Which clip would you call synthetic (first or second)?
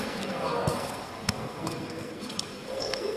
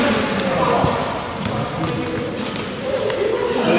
first